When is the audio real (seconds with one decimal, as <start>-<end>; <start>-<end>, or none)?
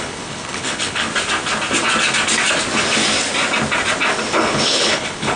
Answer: 1.1-4.3